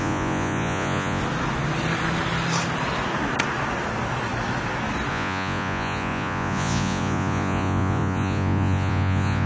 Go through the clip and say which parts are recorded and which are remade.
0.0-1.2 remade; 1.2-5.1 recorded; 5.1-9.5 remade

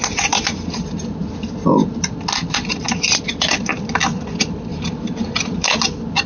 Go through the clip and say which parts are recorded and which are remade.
0.0-0.8 remade; 0.8-2.4 recorded; 2.4-3.8 remade; 3.8-4.7 recorded; 4.7-5.7 remade; 5.7-6.3 recorded

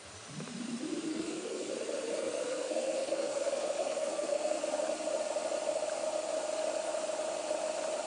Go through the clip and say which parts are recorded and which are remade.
0.0-1.1 recorded; 1.1-1.7 remade; 1.7-2.1 recorded; 2.1-4.6 remade; 4.6-8.1 recorded

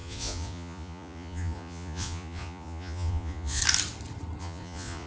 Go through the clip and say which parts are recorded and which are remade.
0.0-3.6 remade; 3.6-4.4 recorded; 4.4-5.1 remade

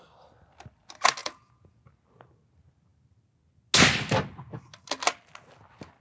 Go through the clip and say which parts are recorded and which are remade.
0.0-1.2 recorded; 1.2-1.9 remade; 1.9-6.0 recorded

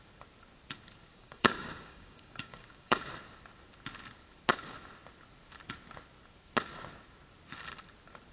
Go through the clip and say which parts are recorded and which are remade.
0.0-1.1 recorded; 1.1-3.1 remade; 3.1-8.3 recorded

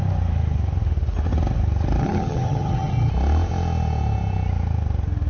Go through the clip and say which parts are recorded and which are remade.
0.0-2.0 recorded; 2.0-3.1 remade; 3.1-5.3 recorded